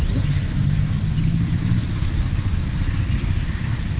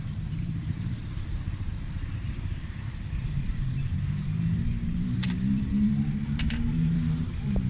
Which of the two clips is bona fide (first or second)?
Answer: first